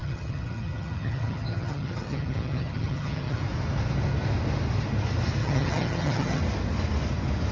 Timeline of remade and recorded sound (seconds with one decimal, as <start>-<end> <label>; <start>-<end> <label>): 0.0-3.4 remade; 3.4-5.4 recorded; 5.4-6.4 remade; 6.4-7.5 recorded